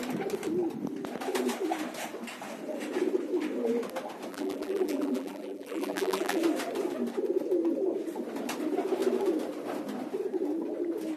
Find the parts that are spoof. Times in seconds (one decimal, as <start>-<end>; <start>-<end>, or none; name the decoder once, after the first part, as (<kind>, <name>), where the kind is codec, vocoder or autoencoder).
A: 4.3-6.4 (vocoder, BigVGAN v2)